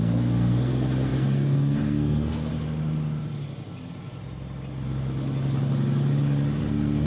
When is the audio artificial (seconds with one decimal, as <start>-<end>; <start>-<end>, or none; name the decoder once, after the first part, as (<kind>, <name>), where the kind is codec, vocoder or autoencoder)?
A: 0.0-2.5 (codec, SNAC); 6.6-7.1